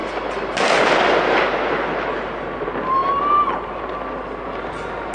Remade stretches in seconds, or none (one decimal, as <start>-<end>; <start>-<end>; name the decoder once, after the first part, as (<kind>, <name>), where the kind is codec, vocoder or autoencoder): none